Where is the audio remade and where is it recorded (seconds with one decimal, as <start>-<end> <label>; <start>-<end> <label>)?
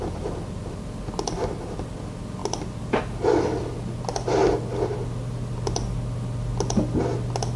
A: 0.0-7.6 recorded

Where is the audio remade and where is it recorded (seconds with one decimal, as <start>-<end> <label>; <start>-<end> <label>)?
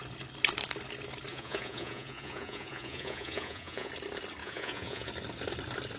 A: 0.0-1.3 recorded; 1.3-3.9 remade; 3.9-4.4 recorded; 4.4-5.1 remade; 5.1-6.0 recorded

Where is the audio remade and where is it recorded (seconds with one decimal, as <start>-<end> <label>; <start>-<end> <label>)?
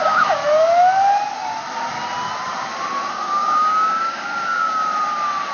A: 0.0-0.4 remade; 0.4-3.1 recorded; 3.1-4.8 remade; 4.8-5.5 recorded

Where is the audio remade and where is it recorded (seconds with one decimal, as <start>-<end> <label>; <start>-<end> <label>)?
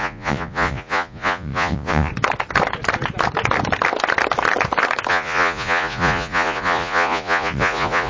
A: 0.0-2.1 remade; 2.1-5.1 recorded; 5.1-8.1 remade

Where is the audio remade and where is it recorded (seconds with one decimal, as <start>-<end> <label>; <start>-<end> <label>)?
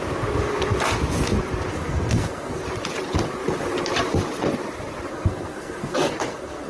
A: 0.0-1.7 recorded; 1.7-2.6 remade; 2.6-5.1 recorded; 5.1-6.7 remade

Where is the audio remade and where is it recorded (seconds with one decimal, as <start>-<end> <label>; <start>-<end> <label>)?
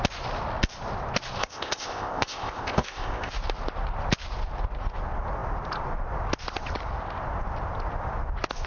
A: 0.0-1.4 recorded; 1.4-3.3 remade; 3.3-8.7 recorded